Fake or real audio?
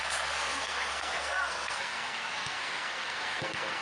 fake